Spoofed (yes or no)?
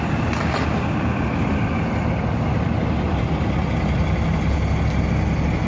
no